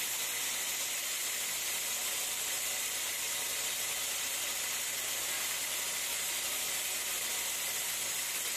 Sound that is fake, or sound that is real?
real